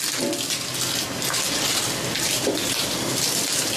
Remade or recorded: recorded